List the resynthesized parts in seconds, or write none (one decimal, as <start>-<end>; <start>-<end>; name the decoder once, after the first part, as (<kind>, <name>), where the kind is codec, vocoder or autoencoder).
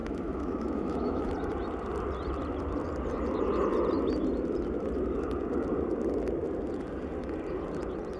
0.0-1.3 (autoencoder, DAC-VAE)